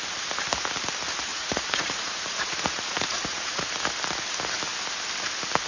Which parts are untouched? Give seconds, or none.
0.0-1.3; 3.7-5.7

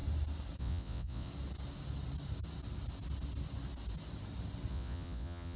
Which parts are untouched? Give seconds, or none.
0.0-0.6; 1.3-4.7

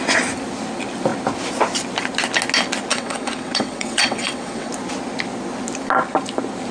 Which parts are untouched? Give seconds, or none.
0.0-2.9; 4.7-6.7

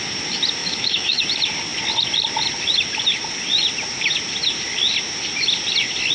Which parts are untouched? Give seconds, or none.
0.0-0.6; 1.2-6.1

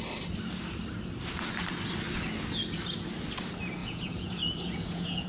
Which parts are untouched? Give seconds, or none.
0.0-3.8